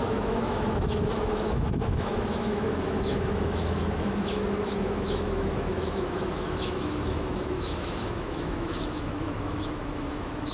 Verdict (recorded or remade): remade